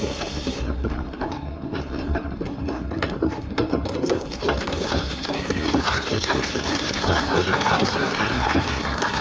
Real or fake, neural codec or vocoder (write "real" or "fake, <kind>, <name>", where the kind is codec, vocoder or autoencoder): fake, codec, SNAC